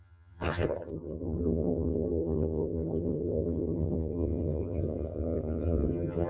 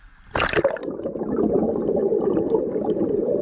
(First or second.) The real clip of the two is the second